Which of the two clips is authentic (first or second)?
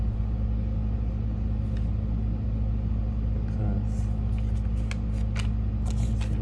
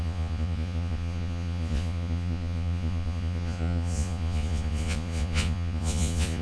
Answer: first